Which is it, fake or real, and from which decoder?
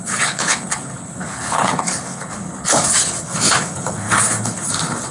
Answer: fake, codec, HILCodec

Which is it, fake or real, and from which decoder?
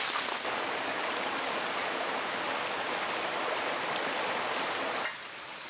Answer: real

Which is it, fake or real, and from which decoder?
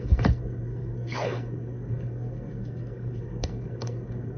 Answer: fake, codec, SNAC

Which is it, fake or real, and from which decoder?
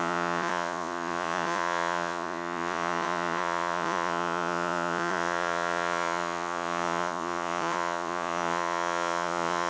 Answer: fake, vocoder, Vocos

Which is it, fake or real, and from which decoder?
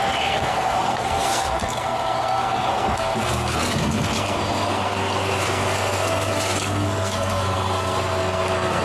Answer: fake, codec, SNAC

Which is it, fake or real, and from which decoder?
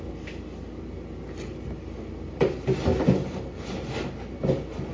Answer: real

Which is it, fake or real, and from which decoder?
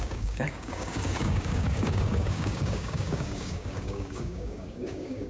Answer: fake, codec, DAC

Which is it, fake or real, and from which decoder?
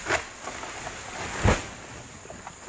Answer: real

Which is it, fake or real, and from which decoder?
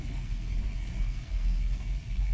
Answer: fake, codec, SNAC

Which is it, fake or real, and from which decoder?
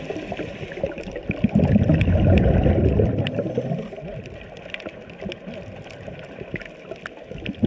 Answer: real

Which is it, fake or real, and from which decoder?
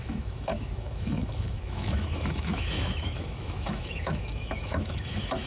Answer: fake, autoencoder, DAC-VAE